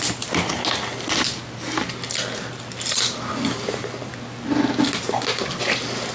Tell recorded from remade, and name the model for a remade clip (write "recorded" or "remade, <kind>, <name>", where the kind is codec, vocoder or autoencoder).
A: recorded